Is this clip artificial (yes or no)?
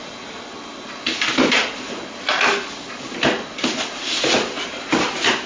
no